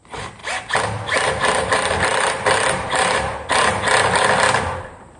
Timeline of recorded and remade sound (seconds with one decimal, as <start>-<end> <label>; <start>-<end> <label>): 0.0-5.2 recorded